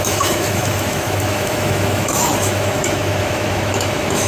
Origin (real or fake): fake